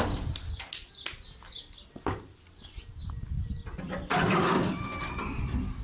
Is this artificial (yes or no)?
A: no